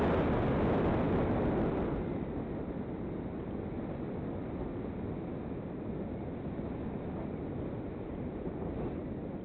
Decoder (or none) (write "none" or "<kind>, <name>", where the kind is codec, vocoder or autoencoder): none